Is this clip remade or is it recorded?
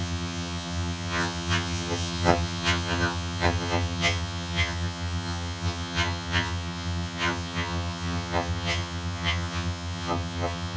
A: remade